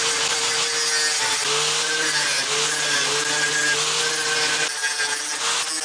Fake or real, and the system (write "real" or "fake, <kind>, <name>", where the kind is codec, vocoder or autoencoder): real